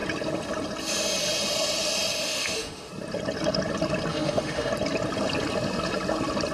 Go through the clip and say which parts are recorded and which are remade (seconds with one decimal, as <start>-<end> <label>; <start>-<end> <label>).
0.0-2.2 recorded; 2.2-2.9 remade; 2.9-4.1 recorded; 4.1-4.7 remade; 4.7-6.5 recorded

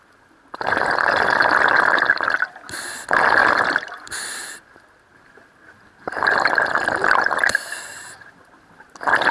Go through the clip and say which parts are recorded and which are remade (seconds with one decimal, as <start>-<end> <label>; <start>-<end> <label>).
0.0-9.3 recorded

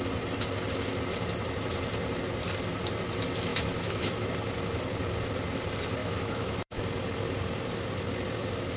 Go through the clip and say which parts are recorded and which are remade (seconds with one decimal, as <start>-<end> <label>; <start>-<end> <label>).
0.0-3.5 recorded; 3.5-4.3 remade; 4.3-6.0 recorded; 6.0-6.8 remade; 6.8-8.8 recorded

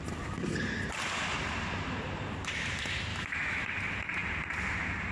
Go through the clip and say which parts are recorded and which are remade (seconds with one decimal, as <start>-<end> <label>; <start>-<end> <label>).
0.0-3.1 recorded; 3.1-3.7 remade; 3.7-5.1 recorded

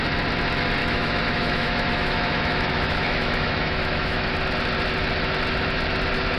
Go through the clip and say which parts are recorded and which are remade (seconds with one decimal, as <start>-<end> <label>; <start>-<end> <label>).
0.0-0.8 recorded; 0.8-4.3 remade; 4.3-6.4 recorded

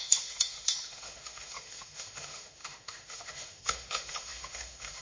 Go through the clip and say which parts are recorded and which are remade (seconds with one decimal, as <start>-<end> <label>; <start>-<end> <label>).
0.0-5.0 remade

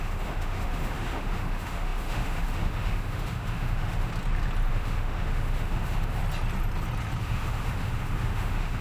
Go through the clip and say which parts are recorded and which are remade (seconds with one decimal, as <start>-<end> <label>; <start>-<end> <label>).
0.0-4.1 remade; 4.1-4.7 recorded; 4.7-6.2 remade; 6.2-7.2 recorded; 7.2-8.8 remade